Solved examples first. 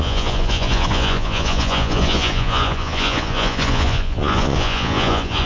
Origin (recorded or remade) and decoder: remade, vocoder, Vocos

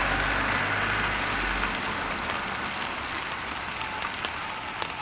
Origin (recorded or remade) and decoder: recorded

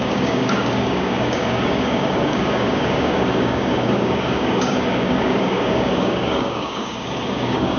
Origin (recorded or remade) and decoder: remade, codec, DAC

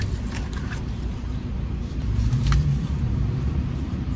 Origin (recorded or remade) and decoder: remade, vocoder, BigVGAN v2